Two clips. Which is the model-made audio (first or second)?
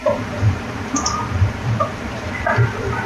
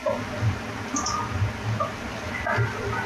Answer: first